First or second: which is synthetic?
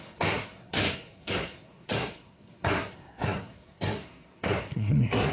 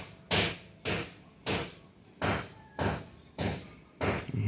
first